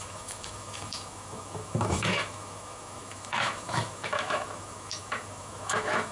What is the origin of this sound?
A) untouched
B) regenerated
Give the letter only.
B